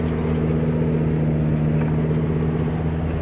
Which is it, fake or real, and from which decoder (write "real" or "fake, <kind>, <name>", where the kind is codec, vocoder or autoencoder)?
real